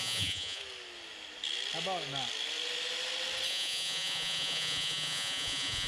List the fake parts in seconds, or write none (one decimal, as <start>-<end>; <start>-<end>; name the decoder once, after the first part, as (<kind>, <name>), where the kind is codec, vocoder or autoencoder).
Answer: 0.0-0.6 (vocoder, Vocos); 3.5-5.9